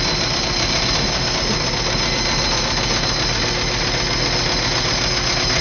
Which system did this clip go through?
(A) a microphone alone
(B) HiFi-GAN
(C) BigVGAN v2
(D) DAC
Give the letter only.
A